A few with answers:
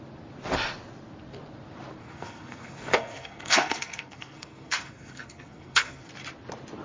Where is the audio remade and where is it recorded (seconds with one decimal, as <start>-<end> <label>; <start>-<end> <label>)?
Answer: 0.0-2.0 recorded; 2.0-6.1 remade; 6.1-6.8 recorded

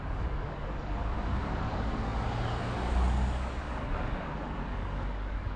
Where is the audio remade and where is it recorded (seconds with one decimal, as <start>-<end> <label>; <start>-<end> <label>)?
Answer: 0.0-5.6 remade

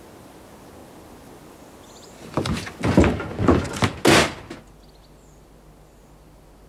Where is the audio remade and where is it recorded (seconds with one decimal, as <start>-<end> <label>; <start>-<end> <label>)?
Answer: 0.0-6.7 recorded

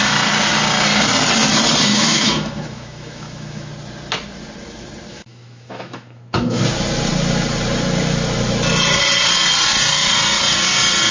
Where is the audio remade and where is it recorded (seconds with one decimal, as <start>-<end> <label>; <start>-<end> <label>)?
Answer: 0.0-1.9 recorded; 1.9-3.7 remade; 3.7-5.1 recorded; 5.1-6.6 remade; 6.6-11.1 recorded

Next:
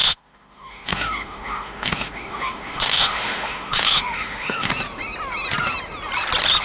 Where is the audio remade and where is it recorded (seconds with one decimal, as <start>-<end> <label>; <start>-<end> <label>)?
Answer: 0.0-4.7 remade; 4.7-6.6 recorded

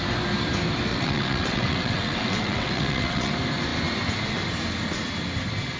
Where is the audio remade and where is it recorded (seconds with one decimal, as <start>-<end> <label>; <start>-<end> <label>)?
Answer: 0.0-0.9 recorded; 0.9-3.3 remade; 3.3-5.8 recorded

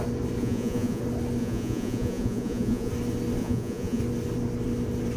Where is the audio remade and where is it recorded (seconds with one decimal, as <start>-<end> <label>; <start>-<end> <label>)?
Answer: 0.0-0.4 recorded; 0.4-1.0 remade; 1.0-1.4 recorded; 1.4-2.9 remade; 2.9-3.4 recorded; 3.4-4.0 remade; 4.0-5.2 recorded